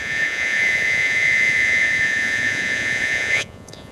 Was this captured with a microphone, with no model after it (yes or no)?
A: no